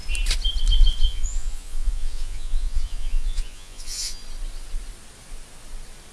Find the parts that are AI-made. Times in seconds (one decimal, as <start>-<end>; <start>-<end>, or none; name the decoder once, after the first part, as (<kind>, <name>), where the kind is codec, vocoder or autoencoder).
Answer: 1.0-4.2 (vocoder, Vocos)